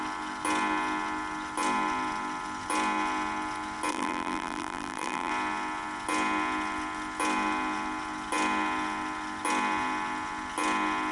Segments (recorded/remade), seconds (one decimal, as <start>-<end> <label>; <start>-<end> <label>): 0.0-3.9 recorded; 3.9-5.3 remade; 5.3-11.1 recorded